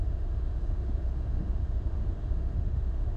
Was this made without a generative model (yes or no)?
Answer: no